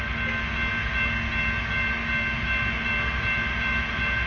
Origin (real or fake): real